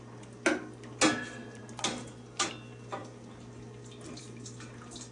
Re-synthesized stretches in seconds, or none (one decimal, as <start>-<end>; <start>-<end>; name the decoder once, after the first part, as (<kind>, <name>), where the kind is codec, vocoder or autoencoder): none